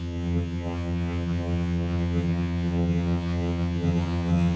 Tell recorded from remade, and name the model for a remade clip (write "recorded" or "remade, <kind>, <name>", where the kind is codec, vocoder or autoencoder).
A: remade, vocoder, HiFi-GAN